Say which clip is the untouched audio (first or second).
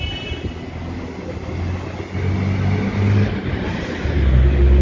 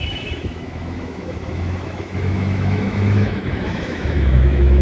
first